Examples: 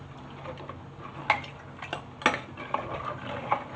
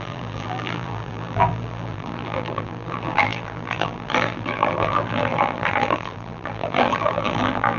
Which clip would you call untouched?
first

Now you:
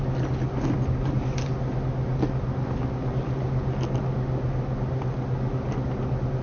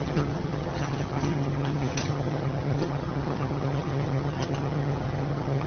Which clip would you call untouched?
first